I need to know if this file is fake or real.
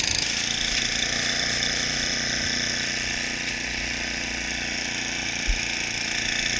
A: real